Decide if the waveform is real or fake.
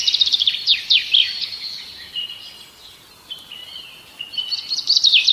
real